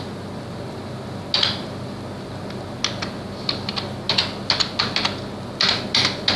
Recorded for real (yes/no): yes